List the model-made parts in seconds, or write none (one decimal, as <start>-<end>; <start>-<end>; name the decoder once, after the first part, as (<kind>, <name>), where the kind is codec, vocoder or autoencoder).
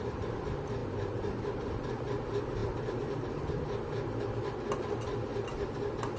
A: none